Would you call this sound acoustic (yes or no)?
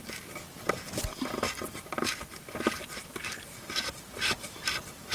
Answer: yes